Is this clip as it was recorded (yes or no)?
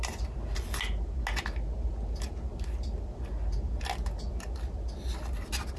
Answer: yes